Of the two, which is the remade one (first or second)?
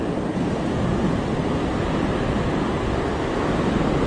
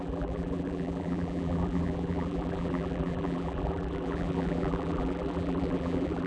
second